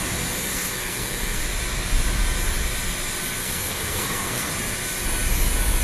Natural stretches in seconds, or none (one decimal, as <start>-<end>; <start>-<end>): 0.0-0.4; 1.4-3.4; 4.5-5.8